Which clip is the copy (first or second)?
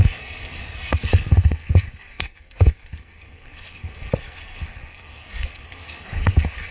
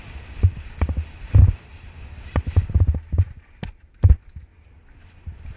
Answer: first